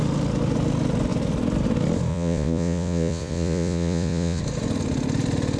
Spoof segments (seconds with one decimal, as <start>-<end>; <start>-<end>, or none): 2.1-4.4